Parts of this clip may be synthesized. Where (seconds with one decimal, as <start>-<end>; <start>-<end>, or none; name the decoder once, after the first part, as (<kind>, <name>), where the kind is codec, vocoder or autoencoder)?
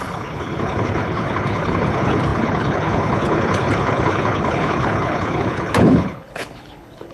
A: 0.0-7.1 (codec, HILCodec)